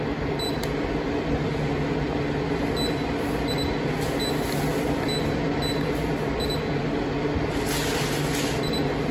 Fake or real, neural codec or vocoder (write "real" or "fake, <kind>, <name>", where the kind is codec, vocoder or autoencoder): real